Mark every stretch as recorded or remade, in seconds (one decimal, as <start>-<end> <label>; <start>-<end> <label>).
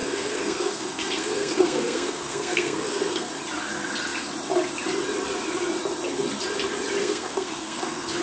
0.0-3.3 remade; 3.3-7.0 recorded; 7.0-8.2 remade